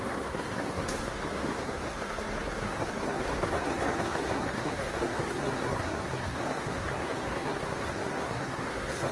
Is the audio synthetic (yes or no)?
yes